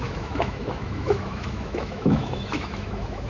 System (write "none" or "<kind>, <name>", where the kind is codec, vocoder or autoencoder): autoencoder, DAC-VAE